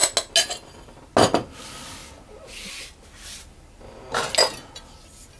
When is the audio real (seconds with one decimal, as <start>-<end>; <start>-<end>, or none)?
0.0-5.4